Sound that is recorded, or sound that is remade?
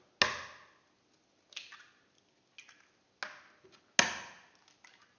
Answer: recorded